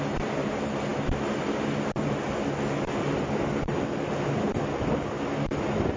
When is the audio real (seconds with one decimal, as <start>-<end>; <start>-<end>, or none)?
0.0-6.0